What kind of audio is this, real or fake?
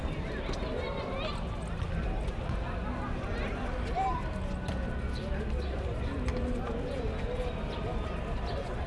real